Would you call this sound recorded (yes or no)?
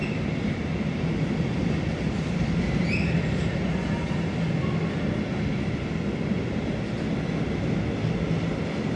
yes